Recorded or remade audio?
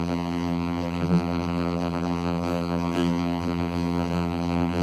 remade